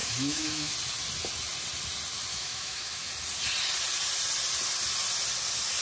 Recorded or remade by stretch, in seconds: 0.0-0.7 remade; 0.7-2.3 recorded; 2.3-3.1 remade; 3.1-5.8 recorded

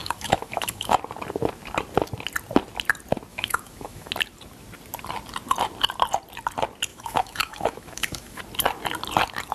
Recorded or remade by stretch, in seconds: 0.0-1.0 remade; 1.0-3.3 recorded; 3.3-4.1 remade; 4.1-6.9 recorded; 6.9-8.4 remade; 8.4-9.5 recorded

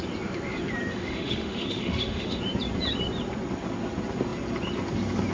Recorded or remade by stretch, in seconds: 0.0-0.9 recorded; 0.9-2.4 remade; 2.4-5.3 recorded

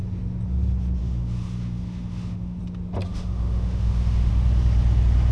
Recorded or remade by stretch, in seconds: 0.0-1.0 recorded; 1.0-2.6 remade; 2.6-3.1 recorded; 3.1-4.3 remade; 4.3-5.3 recorded